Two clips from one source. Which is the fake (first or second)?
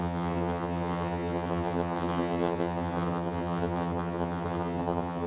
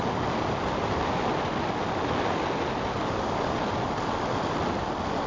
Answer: first